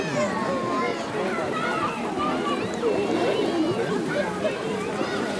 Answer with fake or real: fake